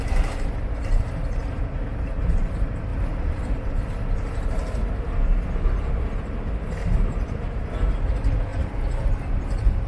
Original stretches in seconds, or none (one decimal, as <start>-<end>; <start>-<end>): 0.0-2.9; 3.7-6.8; 7.6-8.5; 9.1-9.9